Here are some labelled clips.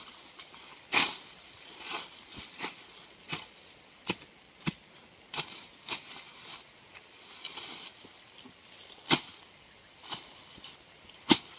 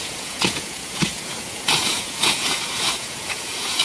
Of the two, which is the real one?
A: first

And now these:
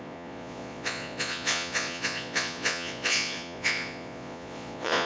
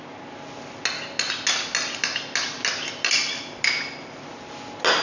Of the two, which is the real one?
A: second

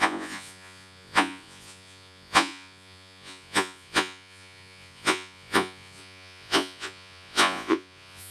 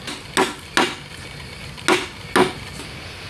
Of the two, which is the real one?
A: second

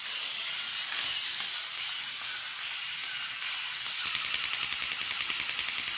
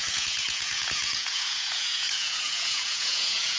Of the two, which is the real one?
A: first